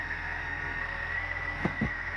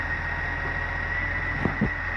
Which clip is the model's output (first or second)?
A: first